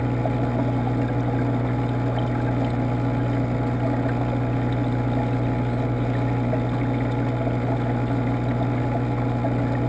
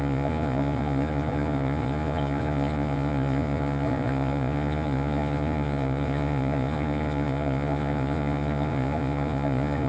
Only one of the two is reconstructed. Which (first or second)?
second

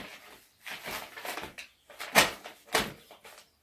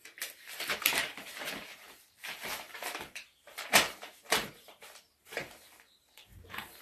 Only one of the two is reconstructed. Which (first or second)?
second